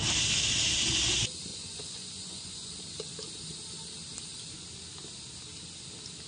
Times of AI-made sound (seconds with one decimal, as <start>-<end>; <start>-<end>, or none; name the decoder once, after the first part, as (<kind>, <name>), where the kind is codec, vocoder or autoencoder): 1.5-2.7 (vocoder, Vocos)

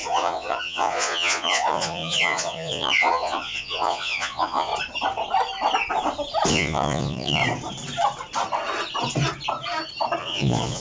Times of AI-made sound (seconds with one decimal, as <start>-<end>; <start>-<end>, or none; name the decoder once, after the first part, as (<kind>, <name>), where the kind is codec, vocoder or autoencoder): 0.0-4.7 (vocoder, Vocos); 6.5-7.4; 10.2-10.8